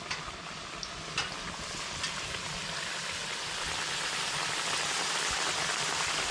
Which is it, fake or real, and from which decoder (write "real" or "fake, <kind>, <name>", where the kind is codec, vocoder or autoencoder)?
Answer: real